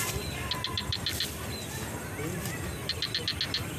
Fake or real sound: real